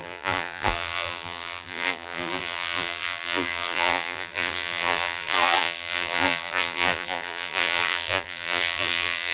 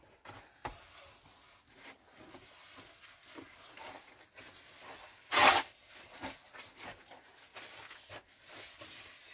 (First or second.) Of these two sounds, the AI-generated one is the first